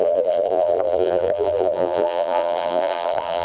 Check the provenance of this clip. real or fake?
fake